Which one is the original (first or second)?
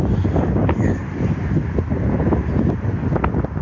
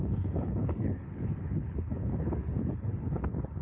first